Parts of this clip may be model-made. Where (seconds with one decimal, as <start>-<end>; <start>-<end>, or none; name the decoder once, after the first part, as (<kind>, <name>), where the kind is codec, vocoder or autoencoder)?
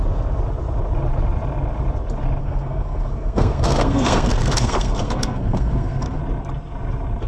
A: 2.4-6.2 (codec, SNAC)